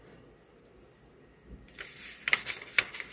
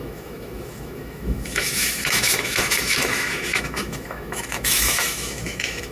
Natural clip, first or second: first